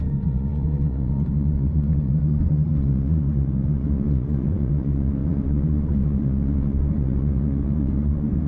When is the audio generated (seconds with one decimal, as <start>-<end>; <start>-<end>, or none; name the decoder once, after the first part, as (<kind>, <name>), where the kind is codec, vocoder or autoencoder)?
0.0-8.5 (vocoder, Vocos)